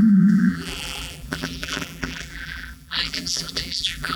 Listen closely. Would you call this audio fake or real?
fake